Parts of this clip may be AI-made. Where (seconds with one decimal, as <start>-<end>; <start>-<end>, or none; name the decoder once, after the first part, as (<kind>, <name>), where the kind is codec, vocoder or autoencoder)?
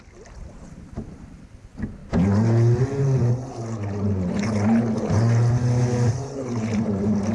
none